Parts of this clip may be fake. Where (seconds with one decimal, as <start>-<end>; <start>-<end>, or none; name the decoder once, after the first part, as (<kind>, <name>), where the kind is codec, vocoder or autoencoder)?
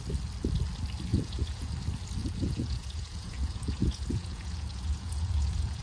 1.1-1.7 (vocoder, Vocos); 2.2-5.8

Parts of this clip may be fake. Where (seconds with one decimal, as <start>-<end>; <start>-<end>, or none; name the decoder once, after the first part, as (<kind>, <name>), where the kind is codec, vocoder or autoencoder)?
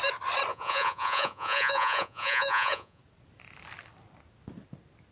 0.5-3.0 (vocoder, Vocos)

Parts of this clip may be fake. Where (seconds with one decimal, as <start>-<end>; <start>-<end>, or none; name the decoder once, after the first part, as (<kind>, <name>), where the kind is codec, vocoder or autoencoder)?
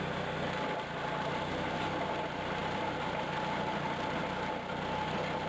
none